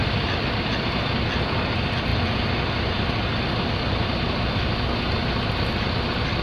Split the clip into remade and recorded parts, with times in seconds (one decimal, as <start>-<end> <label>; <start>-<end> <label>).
0.0-0.6 remade; 0.6-6.4 recorded